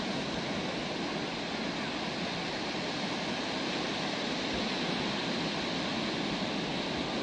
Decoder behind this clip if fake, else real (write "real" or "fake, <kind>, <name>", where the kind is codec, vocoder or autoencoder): real